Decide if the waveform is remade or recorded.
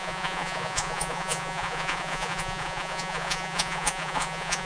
remade